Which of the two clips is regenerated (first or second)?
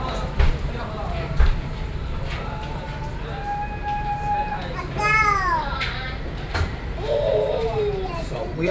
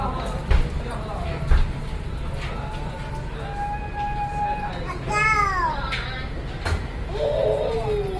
first